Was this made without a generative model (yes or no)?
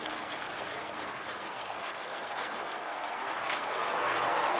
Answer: no